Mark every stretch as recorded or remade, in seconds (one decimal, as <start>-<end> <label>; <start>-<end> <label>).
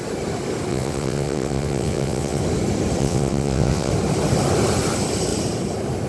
0.0-0.7 recorded; 0.7-2.4 remade; 2.4-3.0 recorded; 3.0-3.9 remade; 3.9-6.1 recorded